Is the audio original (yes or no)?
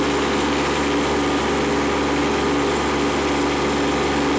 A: yes